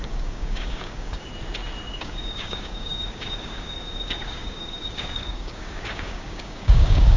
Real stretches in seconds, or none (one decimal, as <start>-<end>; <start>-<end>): 1.3-1.9